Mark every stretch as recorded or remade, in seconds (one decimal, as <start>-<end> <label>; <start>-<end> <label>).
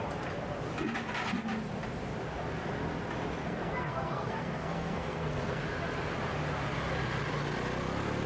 0.0-3.4 recorded; 3.4-5.6 remade; 5.6-8.3 recorded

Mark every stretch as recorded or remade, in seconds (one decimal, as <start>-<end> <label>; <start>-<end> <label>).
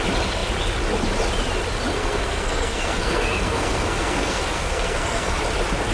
0.0-1.9 recorded; 1.9-5.4 remade; 5.4-5.9 recorded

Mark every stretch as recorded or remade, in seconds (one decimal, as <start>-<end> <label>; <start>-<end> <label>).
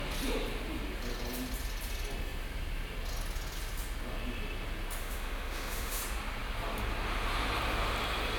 0.0-5.0 recorded; 5.0-6.0 remade; 6.0-8.4 recorded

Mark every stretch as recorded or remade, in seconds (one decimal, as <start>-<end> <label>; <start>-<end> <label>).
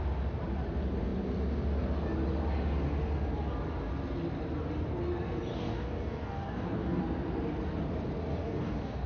0.0-5.5 recorded; 5.5-7.0 remade; 7.0-8.3 recorded; 8.3-9.1 remade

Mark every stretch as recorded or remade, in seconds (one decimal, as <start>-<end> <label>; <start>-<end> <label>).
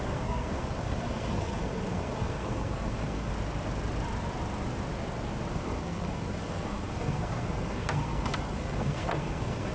0.0-3.3 remade; 3.3-5.5 recorded; 5.5-9.7 remade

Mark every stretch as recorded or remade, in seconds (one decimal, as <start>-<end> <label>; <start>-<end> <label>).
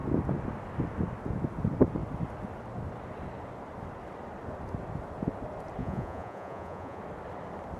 0.0-5.8 recorded; 5.8-7.0 remade; 7.0-7.8 recorded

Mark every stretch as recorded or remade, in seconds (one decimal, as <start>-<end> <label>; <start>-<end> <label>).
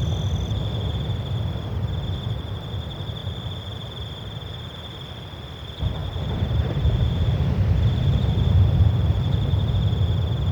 0.0-6.0 recorded; 6.0-9.7 remade; 9.7-10.5 recorded